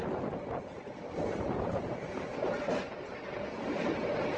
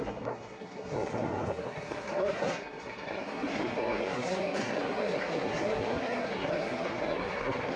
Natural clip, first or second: first